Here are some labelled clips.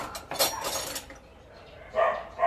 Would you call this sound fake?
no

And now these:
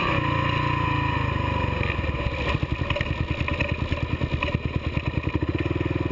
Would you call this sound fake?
no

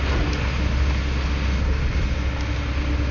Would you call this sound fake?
no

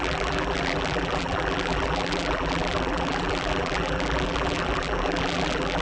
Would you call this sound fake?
yes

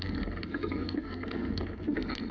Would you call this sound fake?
yes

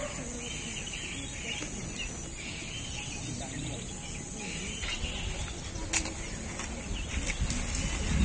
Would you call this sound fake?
no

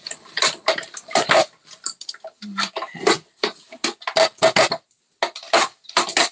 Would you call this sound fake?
no